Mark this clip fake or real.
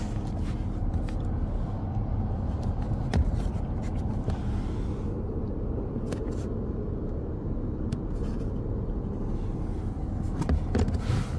real